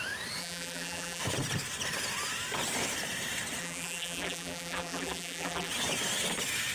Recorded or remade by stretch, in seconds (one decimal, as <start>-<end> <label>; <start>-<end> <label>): 0.0-0.4 recorded; 0.4-1.2 remade; 1.2-3.6 recorded; 3.6-5.7 remade; 5.7-6.7 recorded